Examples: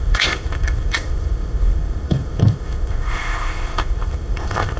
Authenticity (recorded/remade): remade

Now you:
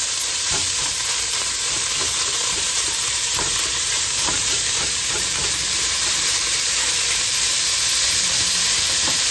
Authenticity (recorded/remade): remade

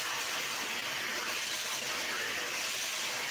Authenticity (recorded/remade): recorded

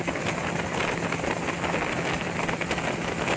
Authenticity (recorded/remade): recorded